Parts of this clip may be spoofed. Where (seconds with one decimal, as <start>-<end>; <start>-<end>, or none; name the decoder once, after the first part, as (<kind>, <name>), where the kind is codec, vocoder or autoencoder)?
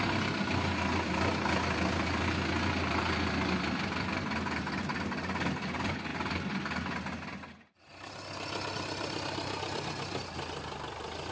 none